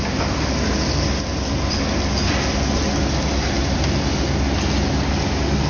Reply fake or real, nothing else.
real